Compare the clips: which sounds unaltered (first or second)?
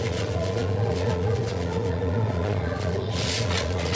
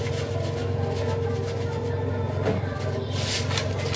second